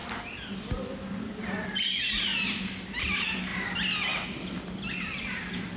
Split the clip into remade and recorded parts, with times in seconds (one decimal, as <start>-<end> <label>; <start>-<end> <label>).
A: 0.0-5.8 recorded

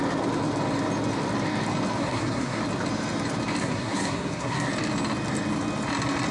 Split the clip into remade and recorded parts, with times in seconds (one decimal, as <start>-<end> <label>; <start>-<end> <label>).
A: 0.0-2.0 recorded; 2.0-2.6 remade; 2.6-3.6 recorded; 3.6-4.7 remade; 4.7-6.3 recorded

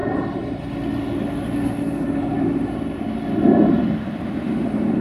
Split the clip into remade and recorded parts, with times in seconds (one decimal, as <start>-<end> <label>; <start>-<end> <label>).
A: 0.0-5.0 recorded

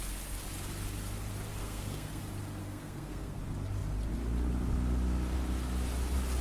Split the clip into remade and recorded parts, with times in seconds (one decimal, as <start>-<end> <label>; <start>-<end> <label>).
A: 0.0-1.6 recorded; 1.6-2.2 remade; 2.2-2.6 recorded; 2.6-3.4 remade; 3.4-6.4 recorded

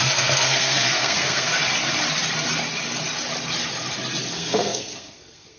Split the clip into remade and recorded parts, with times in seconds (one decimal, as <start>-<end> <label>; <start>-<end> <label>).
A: 0.0-1.5 remade; 1.5-4.3 recorded; 4.3-5.6 remade